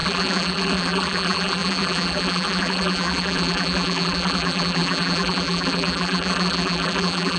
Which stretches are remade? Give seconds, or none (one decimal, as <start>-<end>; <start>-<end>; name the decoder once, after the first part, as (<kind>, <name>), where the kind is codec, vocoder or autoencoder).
0.0-7.4 (vocoder, BigVGAN v2)